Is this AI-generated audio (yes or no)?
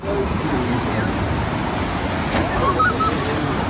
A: no